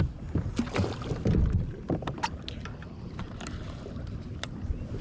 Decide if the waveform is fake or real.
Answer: real